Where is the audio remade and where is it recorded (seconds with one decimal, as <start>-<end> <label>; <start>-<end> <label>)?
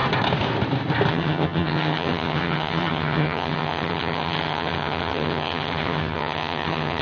0.0-1.1 recorded; 1.1-7.0 remade